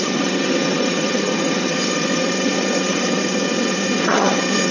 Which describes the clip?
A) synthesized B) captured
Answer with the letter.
A